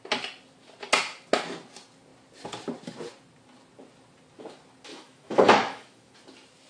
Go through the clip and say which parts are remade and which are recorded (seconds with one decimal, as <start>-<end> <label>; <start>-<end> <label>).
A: 0.0-4.9 recorded; 4.9-6.1 remade; 6.1-6.7 recorded